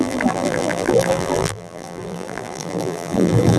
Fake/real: fake